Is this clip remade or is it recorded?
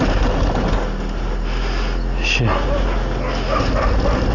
recorded